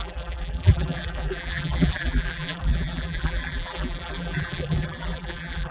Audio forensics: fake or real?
fake